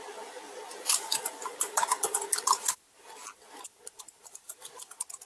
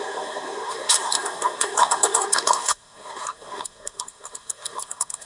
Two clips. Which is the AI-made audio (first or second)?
second